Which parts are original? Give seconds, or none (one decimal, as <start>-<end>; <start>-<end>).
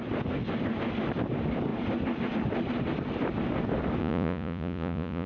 0.0-4.0